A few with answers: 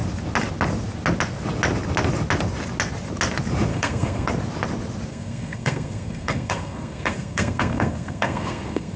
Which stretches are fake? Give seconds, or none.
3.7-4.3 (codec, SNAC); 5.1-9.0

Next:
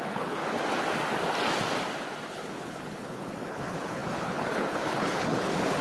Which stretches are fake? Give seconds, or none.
0.0-0.4 (codec, HILCodec); 2.3-5.8

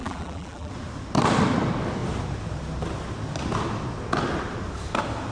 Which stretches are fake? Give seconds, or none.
0.0-0.7 (vocoder, BigVGAN v2)

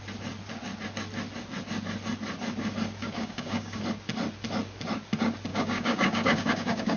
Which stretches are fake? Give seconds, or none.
3.0-3.8 (codec, DAC); 5.5-7.0

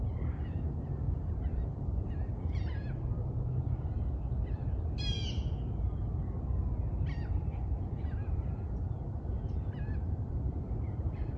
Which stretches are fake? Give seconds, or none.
0.0-3.2 (vocoder, BigVGAN v2); 7.3-11.4

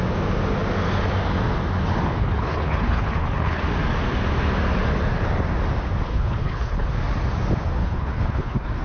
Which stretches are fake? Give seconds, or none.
2.2-3.6 (codec, HILCodec); 6.1-6.9; 7.8-8.8

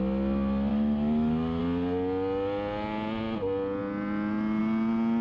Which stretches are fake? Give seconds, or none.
0.7-1.6 (autoencoder, DAC-VAE)